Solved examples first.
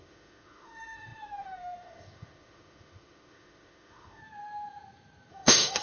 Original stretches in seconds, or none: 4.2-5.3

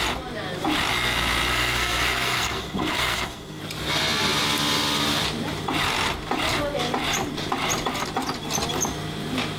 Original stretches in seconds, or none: 0.0-1.5; 3.6-9.6